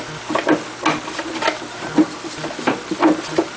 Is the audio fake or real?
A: real